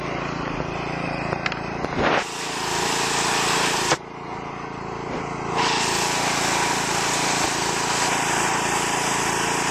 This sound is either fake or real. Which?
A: real